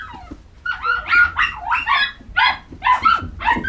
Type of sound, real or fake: real